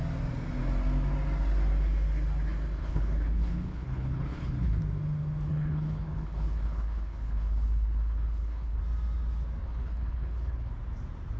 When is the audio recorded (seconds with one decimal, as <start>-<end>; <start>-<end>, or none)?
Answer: 0.0-2.8; 4.8-5.5; 8.8-9.6; 10.7-11.4